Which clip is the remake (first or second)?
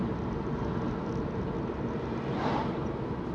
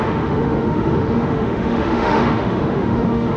second